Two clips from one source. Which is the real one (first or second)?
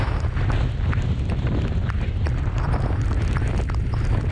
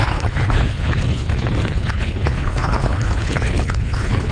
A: first